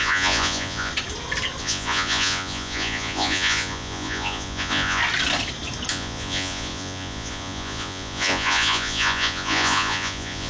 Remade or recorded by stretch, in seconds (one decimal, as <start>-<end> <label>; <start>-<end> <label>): 0.0-0.9 remade; 0.9-1.6 recorded; 1.6-5.0 remade; 5.0-5.9 recorded; 5.9-10.5 remade